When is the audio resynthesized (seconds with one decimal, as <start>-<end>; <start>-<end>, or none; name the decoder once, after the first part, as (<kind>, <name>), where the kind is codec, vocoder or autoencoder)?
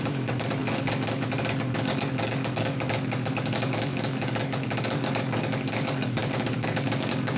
0.0-7.4 (codec, DAC)